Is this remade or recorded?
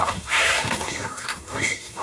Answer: remade